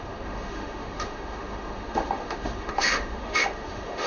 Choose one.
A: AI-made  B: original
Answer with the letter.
A